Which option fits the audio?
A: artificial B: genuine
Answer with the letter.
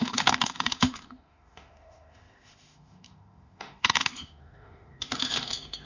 A